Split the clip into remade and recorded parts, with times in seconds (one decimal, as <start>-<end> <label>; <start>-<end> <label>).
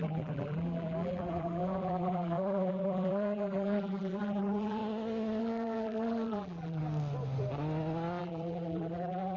0.0-4.8 remade; 4.8-5.4 recorded; 5.4-6.8 remade; 6.8-8.2 recorded; 8.2-9.4 remade